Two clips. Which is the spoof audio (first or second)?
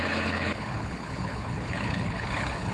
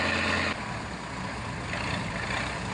first